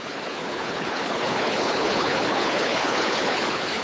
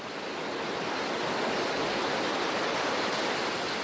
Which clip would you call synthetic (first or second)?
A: first